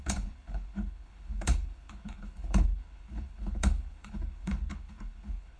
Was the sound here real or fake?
fake